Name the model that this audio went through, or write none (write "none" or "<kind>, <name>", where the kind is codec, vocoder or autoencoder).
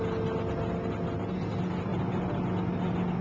none